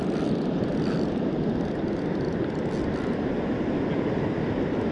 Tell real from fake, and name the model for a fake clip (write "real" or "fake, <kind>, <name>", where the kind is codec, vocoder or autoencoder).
real